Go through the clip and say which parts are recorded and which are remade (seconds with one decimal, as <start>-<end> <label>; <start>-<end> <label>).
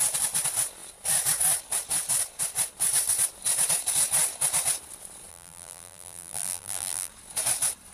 0.0-5.3 recorded; 5.3-7.1 remade; 7.1-7.9 recorded